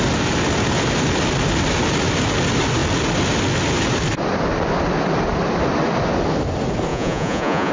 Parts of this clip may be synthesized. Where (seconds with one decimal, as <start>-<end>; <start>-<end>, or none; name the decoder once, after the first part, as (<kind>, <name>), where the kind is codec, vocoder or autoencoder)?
6.9-7.7 (vocoder, Vocos)